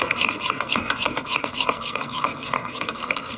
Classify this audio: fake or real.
fake